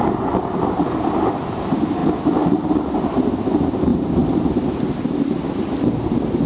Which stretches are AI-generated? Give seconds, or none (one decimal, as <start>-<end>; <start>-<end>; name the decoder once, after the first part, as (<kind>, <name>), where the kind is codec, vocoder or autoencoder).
none